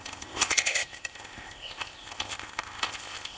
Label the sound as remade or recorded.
remade